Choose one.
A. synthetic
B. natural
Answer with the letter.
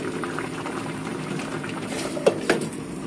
A